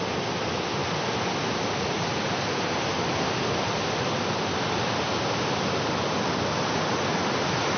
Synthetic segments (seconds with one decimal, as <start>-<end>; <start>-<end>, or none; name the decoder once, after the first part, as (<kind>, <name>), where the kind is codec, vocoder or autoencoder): none